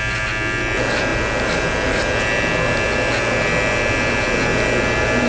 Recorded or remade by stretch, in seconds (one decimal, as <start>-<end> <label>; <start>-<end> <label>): 0.0-5.3 recorded